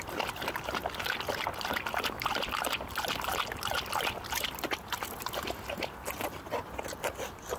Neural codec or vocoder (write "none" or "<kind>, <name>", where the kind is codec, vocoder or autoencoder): none